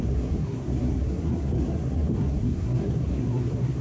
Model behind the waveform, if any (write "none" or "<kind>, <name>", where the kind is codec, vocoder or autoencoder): codec, SNAC